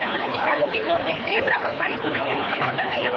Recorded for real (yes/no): no